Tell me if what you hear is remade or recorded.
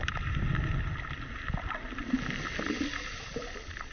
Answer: recorded